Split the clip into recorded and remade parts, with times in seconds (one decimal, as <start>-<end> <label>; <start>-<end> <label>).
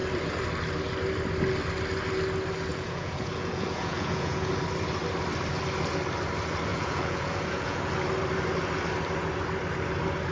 0.0-2.7 recorded; 2.7-4.5 remade; 4.5-6.7 recorded; 6.7-7.9 remade; 7.9-10.3 recorded